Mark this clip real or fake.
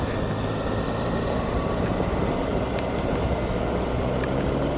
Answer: real